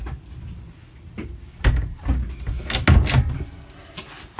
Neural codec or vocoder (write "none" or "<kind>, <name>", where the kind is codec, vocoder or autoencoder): none